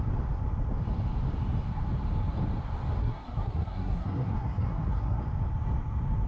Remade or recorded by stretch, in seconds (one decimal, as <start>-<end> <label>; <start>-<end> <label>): 0.0-3.0 recorded; 3.0-5.2 remade; 5.2-6.3 recorded